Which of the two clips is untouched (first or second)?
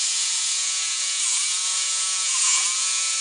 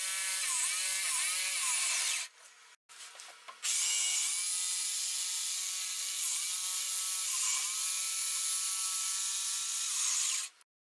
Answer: second